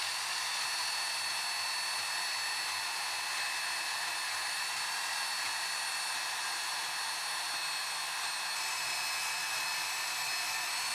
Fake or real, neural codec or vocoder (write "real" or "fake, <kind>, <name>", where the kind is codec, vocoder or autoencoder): real